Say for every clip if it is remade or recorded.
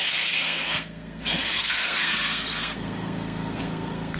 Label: remade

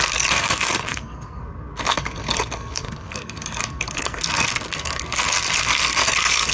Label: remade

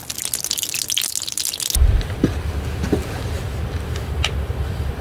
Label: recorded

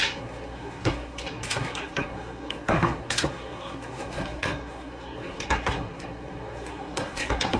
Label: remade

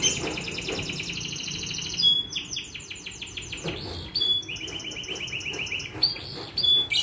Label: recorded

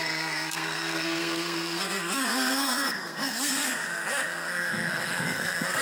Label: remade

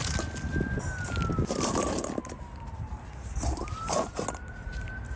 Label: recorded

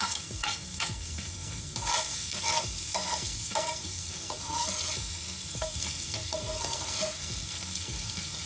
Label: remade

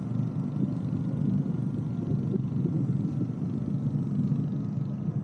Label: recorded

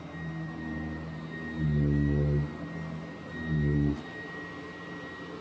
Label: recorded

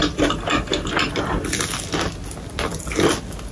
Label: recorded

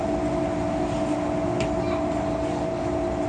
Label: recorded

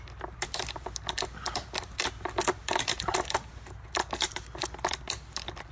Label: recorded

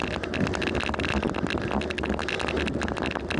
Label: recorded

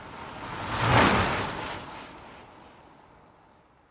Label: recorded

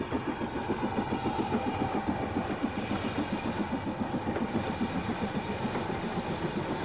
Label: recorded